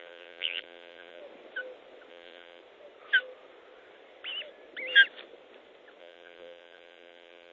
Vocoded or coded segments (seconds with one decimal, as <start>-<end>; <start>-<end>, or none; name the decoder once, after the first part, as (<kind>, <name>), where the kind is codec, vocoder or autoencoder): 0.0-1.2 (vocoder, BigVGAN v2); 2.1-2.6; 6.0-7.5